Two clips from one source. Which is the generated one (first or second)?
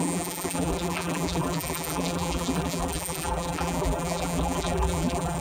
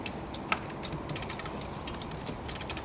first